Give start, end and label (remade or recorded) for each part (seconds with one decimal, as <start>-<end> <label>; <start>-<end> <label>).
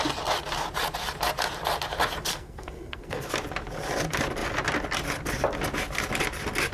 0.0-2.3 recorded; 2.3-3.3 remade; 3.3-6.7 recorded